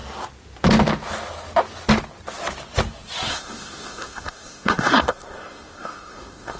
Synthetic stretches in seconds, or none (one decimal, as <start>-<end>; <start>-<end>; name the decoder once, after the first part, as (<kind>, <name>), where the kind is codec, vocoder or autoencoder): 3.3-6.6 (codec, SNAC)

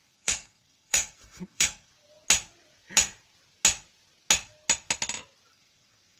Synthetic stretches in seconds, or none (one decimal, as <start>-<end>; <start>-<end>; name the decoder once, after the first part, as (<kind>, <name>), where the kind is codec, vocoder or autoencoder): 0.0-1.9 (codec, SNAC); 5.5-6.2

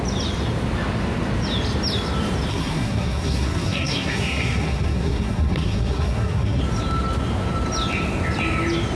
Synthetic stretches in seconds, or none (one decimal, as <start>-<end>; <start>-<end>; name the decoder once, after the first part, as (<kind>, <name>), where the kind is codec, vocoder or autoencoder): 2.5-6.6 (codec, SNAC)

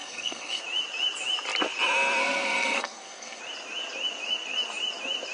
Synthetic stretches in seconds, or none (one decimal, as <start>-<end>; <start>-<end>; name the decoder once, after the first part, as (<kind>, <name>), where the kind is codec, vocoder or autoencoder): 0.0-0.6 (codec, SNAC); 2.2-3.4